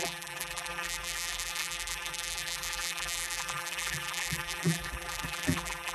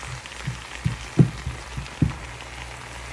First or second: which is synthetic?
first